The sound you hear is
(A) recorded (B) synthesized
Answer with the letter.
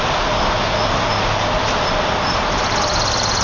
A